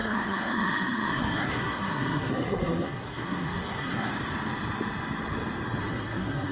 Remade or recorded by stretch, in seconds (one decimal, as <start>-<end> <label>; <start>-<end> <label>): 0.0-4.1 remade; 4.1-5.8 recorded; 5.8-6.5 remade